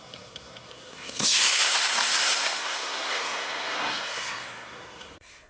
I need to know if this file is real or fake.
fake